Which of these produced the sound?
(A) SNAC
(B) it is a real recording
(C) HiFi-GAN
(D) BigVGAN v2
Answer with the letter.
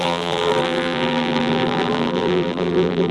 D